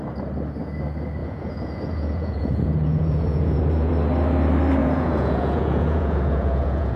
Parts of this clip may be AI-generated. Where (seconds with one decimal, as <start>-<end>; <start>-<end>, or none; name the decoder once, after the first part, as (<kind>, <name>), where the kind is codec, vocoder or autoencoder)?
1.2-3.9 (vocoder, Vocos); 4.8-7.0